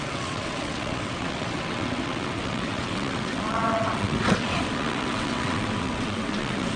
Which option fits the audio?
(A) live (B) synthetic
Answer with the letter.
B